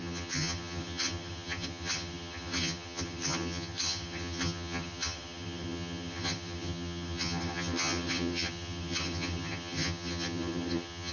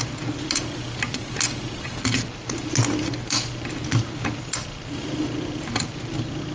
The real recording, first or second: second